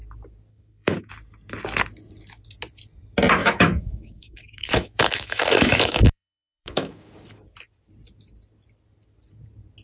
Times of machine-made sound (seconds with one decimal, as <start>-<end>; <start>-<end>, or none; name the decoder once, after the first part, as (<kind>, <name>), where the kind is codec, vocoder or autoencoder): 0.5-1.1 (autoencoder, DAC-VAE); 3.4-7.1